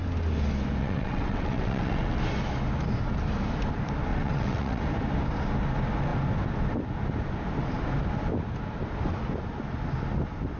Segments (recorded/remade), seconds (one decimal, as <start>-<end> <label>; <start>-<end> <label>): 0.0-0.8 recorded; 0.8-2.2 remade; 2.2-4.1 recorded; 4.1-4.8 remade; 4.8-10.6 recorded